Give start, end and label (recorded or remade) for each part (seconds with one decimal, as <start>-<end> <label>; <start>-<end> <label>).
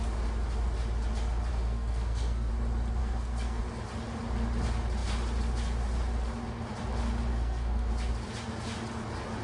0.0-1.5 recorded; 1.5-2.5 remade; 2.5-3.0 recorded; 3.0-3.6 remade; 3.6-7.3 recorded; 7.3-7.9 remade; 7.9-9.4 recorded